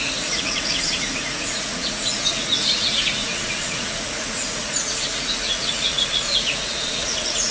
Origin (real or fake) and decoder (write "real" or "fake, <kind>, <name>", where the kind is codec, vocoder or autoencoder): fake, vocoder, Vocos